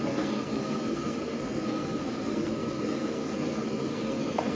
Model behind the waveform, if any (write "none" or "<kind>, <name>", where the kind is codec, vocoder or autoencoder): codec, SNAC